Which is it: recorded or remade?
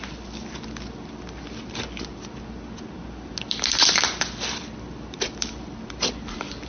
recorded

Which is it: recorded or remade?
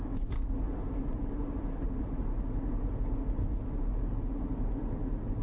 recorded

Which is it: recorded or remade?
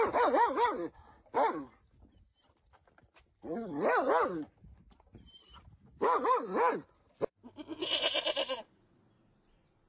recorded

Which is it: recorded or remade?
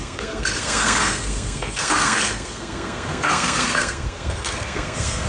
remade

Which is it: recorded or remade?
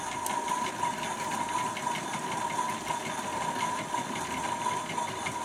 recorded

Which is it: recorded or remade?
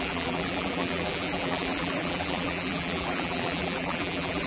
remade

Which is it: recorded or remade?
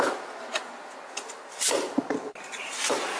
recorded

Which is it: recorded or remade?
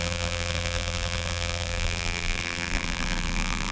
remade